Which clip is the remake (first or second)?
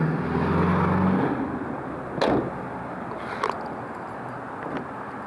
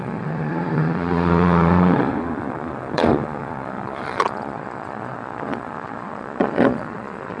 second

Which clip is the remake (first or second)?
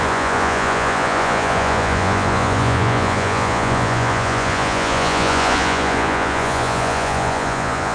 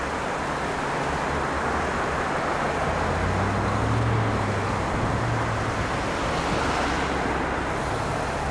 first